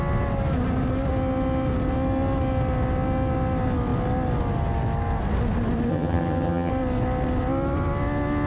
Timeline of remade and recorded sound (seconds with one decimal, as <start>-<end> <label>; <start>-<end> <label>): 0.0-5.9 recorded; 5.9-6.7 remade; 6.7-8.5 recorded